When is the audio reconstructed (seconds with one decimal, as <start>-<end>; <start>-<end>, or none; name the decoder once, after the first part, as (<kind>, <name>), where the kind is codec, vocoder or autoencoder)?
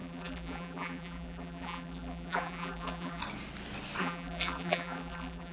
0.0-3.2 (vocoder, BigVGAN v2); 4.0-5.5